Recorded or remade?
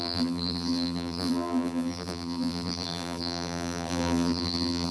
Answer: remade